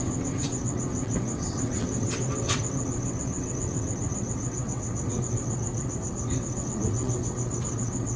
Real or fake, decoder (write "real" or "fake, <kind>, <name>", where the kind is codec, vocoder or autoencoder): fake, vocoder, WaveNeXt